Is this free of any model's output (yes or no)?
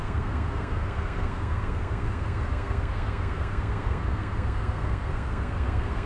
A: no